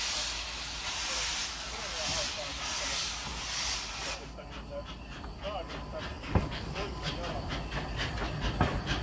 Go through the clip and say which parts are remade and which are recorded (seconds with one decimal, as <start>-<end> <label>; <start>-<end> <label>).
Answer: 0.0-6.1 recorded; 6.1-7.1 remade; 7.1-9.0 recorded